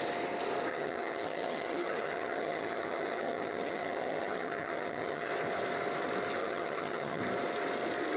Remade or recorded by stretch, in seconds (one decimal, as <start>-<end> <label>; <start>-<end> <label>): 0.0-0.7 recorded; 0.7-5.3 remade; 5.3-6.4 recorded; 6.4-7.2 remade; 7.2-8.2 recorded